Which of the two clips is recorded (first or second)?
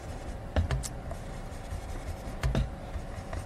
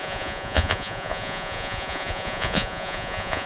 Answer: first